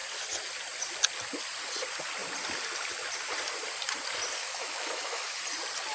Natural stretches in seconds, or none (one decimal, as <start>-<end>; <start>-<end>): 0.0-4.4; 5.4-5.9